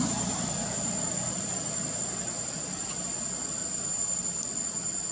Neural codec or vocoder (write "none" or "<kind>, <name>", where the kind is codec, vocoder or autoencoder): none